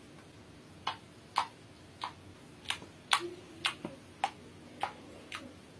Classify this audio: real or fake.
real